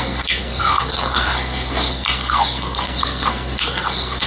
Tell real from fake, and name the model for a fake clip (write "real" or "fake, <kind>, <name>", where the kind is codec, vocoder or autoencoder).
fake, codec, SNAC